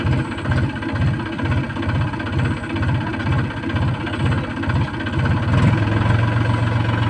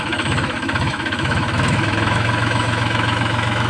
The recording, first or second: first